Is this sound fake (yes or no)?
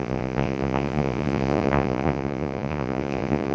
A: yes